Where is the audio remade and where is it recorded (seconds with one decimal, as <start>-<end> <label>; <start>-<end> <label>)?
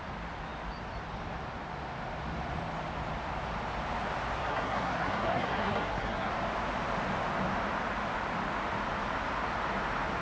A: 0.0-4.4 recorded; 4.4-6.3 remade; 6.3-10.2 recorded